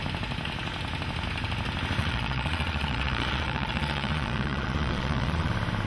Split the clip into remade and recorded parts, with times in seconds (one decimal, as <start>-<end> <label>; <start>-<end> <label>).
0.0-2.0 recorded; 2.0-5.5 remade; 5.5-5.9 recorded